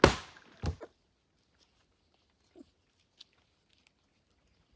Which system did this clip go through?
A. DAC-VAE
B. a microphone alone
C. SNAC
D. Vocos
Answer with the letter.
B